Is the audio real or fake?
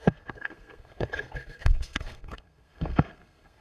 fake